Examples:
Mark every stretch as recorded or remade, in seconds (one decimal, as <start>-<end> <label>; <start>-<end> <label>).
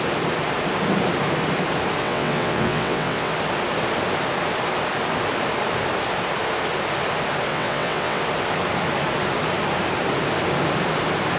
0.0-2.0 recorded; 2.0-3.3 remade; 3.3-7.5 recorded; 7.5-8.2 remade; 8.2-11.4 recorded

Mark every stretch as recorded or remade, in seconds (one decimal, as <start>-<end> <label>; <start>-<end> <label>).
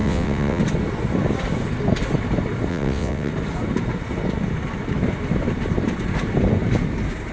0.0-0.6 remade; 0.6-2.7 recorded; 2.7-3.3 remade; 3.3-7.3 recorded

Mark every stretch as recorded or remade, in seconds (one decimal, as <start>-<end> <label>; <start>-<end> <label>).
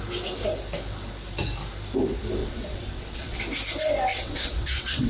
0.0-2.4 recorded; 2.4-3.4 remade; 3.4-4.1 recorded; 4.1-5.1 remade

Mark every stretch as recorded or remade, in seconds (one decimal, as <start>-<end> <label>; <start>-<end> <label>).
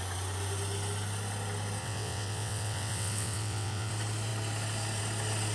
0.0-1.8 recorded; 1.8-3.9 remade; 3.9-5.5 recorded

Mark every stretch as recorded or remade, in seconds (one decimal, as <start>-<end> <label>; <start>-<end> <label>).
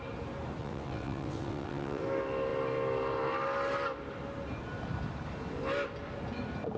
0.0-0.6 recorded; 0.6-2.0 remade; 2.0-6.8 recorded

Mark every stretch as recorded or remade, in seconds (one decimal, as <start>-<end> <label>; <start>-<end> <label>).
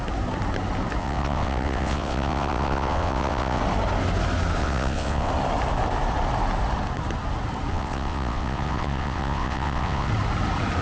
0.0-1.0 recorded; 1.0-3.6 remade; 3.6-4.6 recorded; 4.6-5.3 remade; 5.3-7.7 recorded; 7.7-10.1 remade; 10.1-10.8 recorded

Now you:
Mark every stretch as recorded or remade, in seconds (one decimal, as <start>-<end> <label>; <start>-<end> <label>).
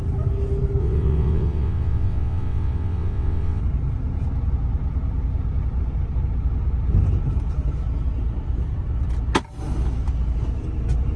0.0-0.8 recorded; 0.8-3.6 remade; 3.6-11.2 recorded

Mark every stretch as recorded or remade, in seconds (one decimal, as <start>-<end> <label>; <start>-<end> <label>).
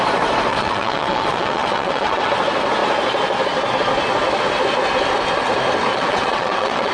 0.0-0.5 recorded; 0.5-2.3 remade; 2.3-5.9 recorded; 5.9-6.9 remade